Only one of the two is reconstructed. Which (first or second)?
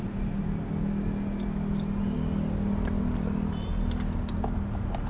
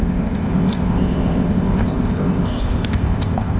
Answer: second